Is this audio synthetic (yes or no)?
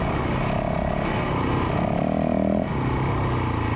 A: no